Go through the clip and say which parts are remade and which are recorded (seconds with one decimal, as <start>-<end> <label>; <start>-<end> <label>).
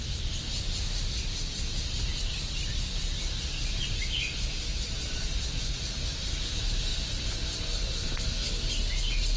0.0-6.9 recorded; 6.9-8.2 remade; 8.2-9.4 recorded